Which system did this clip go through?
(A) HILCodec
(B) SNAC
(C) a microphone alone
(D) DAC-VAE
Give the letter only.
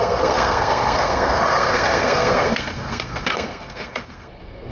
B